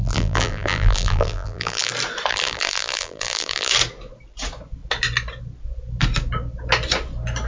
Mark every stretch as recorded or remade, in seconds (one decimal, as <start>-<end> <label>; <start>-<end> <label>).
0.0-1.9 remade; 1.9-2.3 recorded; 2.3-3.7 remade; 3.7-7.5 recorded